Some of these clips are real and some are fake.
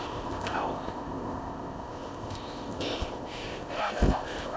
fake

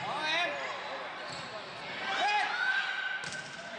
real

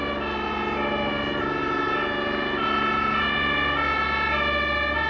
real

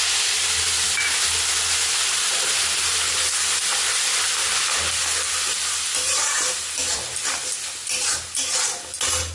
real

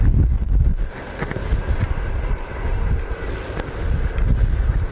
real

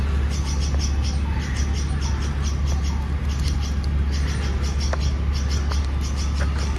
real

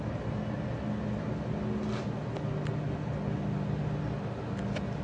real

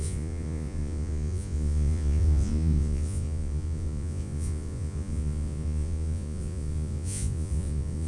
fake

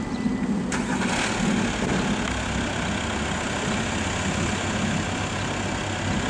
real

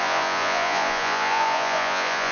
fake